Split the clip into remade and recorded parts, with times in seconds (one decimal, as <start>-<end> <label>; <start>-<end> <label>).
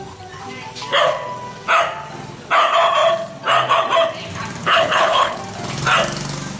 0.0-4.6 recorded; 4.6-5.4 remade; 5.4-6.6 recorded